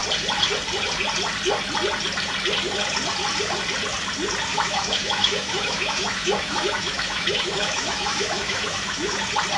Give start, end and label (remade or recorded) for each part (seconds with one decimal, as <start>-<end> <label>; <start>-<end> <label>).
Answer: 0.0-4.5 recorded; 4.5-9.2 remade; 9.2-9.6 recorded